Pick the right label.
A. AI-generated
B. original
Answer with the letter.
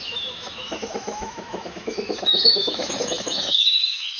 A